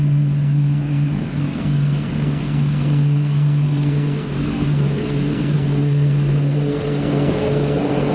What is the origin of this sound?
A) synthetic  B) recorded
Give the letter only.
A